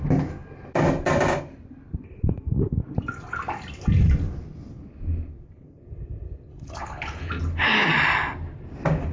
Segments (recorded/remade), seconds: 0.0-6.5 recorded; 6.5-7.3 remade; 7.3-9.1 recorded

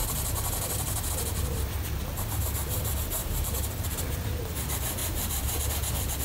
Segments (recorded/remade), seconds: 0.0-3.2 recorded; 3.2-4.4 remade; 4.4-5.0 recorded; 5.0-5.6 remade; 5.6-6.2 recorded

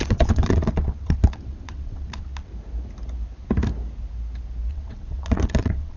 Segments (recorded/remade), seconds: 0.0-2.5 remade; 2.5-4.7 recorded; 4.7-6.0 remade